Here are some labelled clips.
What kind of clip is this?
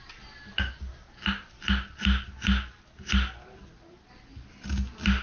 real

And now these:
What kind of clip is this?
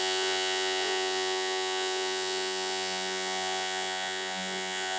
fake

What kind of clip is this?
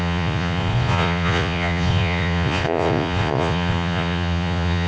fake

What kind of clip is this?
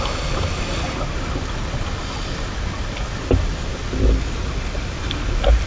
real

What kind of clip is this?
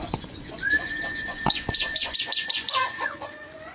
fake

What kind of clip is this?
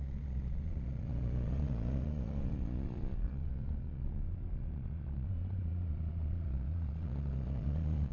fake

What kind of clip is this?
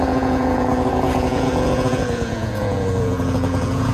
fake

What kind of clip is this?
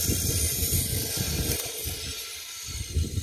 real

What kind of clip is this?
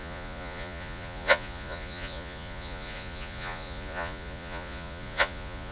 fake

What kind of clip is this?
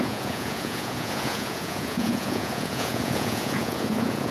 fake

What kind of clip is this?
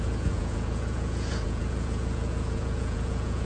fake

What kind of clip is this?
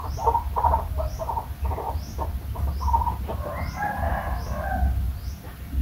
real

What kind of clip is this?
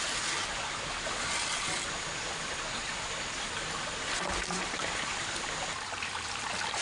real